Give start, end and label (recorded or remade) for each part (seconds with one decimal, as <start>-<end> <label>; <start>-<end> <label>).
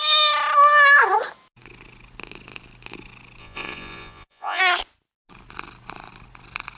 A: 0.0-3.4 recorded; 3.4-4.6 remade; 4.6-6.8 recorded